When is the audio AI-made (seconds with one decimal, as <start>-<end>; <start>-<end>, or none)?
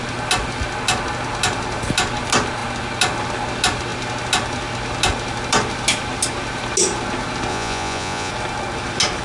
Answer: 7.5-8.3